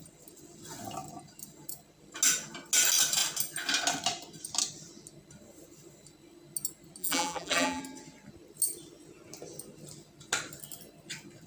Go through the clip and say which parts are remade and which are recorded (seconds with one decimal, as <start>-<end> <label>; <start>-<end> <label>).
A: 0.0-7.0 recorded; 7.0-7.8 remade; 7.8-11.5 recorded